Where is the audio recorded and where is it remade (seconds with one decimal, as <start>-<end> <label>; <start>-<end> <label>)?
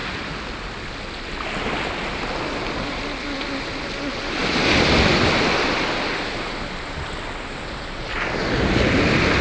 0.0-9.4 recorded